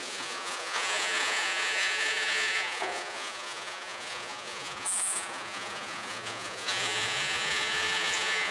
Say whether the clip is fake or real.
fake